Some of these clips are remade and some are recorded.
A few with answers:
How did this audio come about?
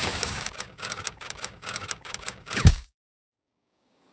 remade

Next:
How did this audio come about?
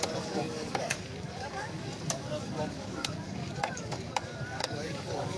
remade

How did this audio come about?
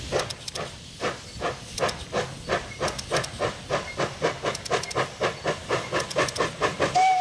recorded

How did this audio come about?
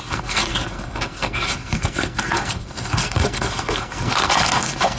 remade